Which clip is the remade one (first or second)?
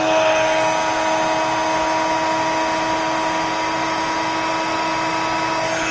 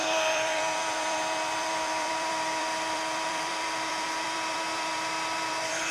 second